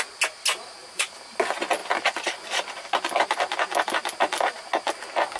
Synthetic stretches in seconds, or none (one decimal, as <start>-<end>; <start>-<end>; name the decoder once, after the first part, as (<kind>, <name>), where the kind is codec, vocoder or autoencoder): 0.8-1.3 (vocoder, BigVGAN v2)